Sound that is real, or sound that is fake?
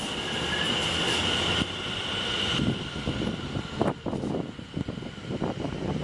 fake